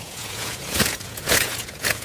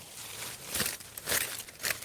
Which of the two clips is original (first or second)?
second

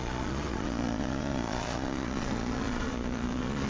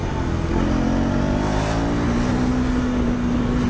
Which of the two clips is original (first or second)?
second